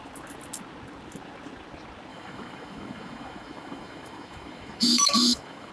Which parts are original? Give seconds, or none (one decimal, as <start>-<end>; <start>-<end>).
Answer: 0.0-2.1